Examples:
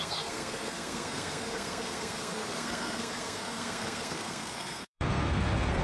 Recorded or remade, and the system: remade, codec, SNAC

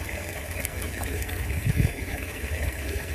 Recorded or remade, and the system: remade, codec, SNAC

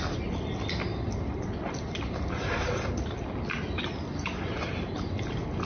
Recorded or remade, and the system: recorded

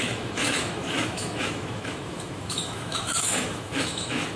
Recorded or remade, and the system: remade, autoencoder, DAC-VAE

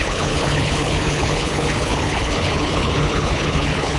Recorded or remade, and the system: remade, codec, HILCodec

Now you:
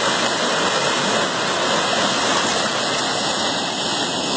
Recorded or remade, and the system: recorded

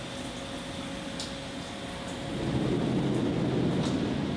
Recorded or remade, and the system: recorded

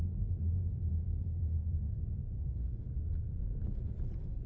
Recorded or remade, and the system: recorded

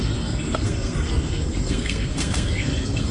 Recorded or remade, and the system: remade, codec, SNAC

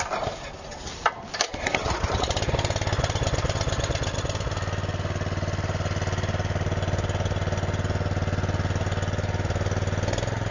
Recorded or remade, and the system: recorded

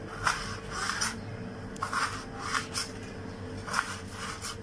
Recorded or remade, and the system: recorded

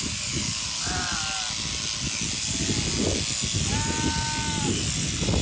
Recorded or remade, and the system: recorded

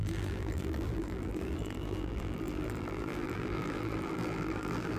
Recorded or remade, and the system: remade, vocoder, BigVGAN v2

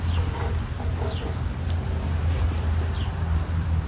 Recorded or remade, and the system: recorded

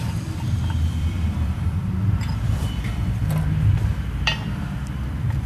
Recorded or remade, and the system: remade, vocoder, BigVGAN v2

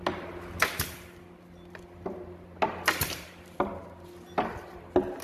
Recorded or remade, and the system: recorded